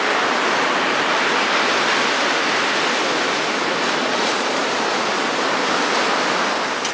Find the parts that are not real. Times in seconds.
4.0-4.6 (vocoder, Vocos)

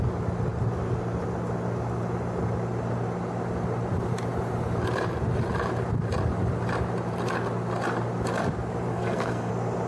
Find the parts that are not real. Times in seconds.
8.9-9.5 (codec, SNAC)

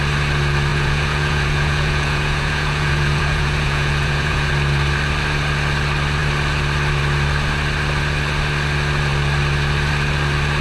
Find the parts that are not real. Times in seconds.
0.7-4.5 (vocoder, Vocos)

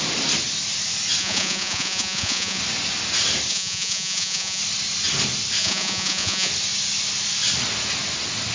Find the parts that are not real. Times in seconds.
1.2-2.6 (vocoder, Vocos); 3.5-4.6; 5.6-6.5